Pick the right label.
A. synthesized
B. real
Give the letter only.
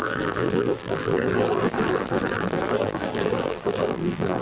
A